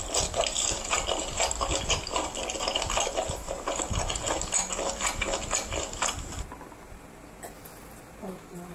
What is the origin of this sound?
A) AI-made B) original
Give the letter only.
B